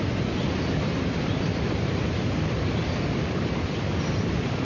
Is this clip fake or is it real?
fake